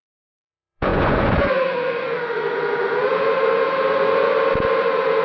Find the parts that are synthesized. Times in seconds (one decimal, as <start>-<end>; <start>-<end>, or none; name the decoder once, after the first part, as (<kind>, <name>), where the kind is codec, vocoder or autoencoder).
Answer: 0.0-4.3 (vocoder, Vocos); 4.8-5.2